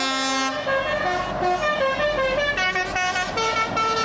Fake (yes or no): no